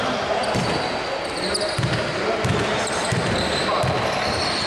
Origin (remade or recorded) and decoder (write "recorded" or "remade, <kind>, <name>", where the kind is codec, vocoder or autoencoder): recorded